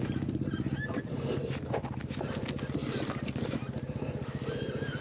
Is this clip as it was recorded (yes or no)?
yes